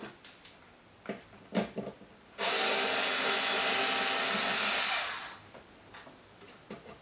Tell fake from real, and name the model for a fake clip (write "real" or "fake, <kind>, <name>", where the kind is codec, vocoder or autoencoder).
real